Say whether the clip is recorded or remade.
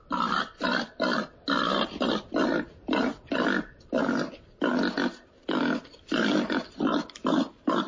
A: recorded